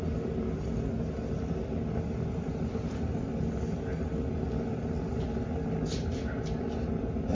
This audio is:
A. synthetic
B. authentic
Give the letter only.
B